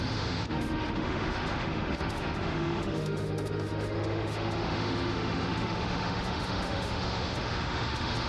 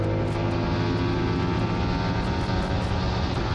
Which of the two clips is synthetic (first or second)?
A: first